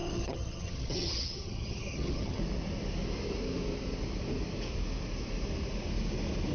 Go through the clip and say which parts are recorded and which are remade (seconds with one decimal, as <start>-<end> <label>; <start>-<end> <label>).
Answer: 0.0-2.4 remade; 2.4-6.5 recorded